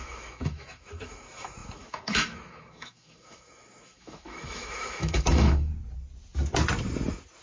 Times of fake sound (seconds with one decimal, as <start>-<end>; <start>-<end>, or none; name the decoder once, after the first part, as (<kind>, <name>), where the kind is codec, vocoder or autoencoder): 0.0-5.7 (autoencoder, DAC-VAE)